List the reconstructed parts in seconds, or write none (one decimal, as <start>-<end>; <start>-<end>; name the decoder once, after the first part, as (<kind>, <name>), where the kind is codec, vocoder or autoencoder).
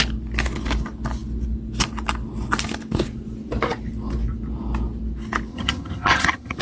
5.5-6.6 (vocoder, HiFi-GAN)